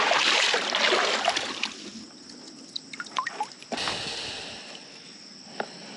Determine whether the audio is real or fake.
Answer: real